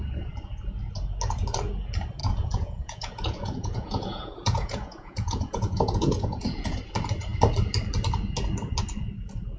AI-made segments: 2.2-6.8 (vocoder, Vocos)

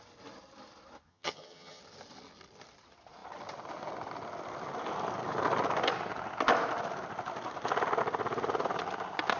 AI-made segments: 1.1-1.8 (vocoder, HiFi-GAN)

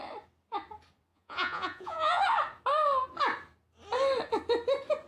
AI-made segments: 1.1-2.2 (vocoder, Vocos)

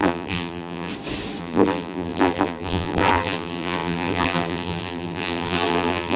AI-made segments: 0.0-0.9 (vocoder, BigVGAN v2); 1.4-6.2

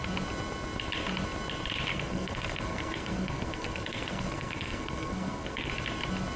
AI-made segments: 1.9-5.7 (codec, SNAC)

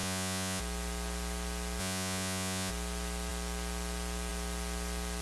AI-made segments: 0.0-0.6 (vocoder, Vocos); 1.8-2.7

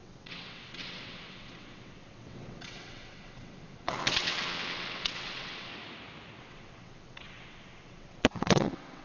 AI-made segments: 0.0-5.7 (vocoder, WaveNeXt); 6.4-9.0

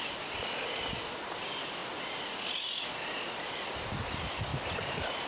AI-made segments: none